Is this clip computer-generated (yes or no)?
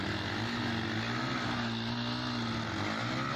no